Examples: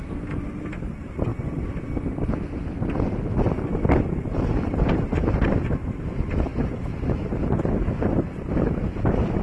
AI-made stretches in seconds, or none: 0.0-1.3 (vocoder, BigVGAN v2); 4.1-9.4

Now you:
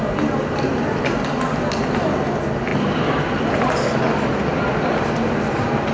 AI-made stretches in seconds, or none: 0.7-1.3 (vocoder, BigVGAN v2); 2.7-3.5

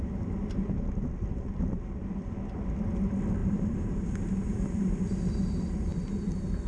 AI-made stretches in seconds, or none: 3.4-4.9 (vocoder, BigVGAN v2)

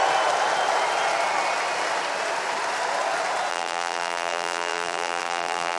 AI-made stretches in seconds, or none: 3.5-5.8 (vocoder, BigVGAN v2)

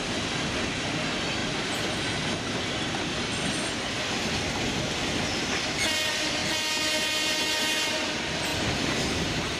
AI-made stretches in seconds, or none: 8.5-9.6 (vocoder, BigVGAN v2)

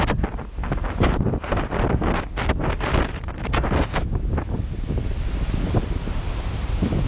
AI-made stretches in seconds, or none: 0.8-1.7 (vocoder, BigVGAN v2); 6.0-7.1

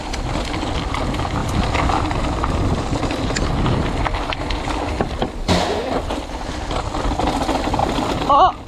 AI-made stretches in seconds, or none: none